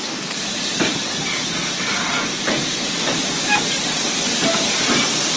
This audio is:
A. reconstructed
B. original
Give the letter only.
B